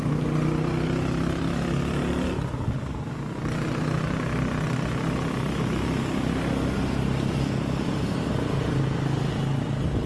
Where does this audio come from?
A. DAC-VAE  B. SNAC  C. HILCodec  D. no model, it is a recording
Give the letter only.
D